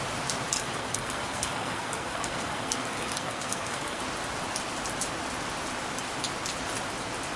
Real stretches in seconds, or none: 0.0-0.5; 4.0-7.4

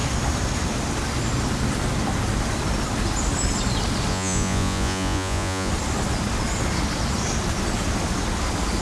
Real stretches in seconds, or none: 0.0-4.1; 5.7-8.8

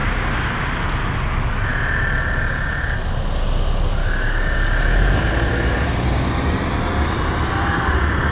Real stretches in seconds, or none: 0.6-4.0; 6.3-8.3

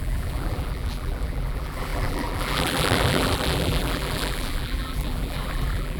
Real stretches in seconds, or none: none

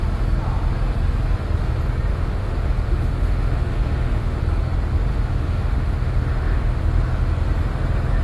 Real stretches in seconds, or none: 0.0-2.1; 4.4-5.1; 6.8-8.2

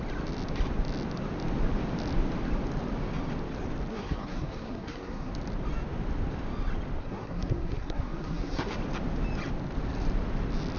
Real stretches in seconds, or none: 0.0-3.9; 5.3-7.0; 8.8-10.8